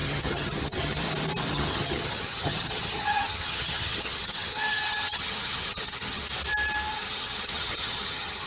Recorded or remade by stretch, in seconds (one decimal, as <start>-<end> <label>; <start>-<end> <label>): 0.0-1.0 remade; 1.0-1.5 recorded; 1.5-6.2 remade; 6.2-6.9 recorded; 6.9-8.5 remade